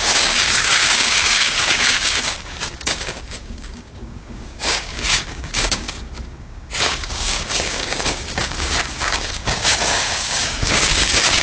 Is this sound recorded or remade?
remade